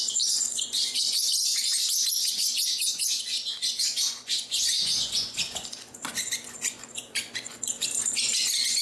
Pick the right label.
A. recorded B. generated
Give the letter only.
B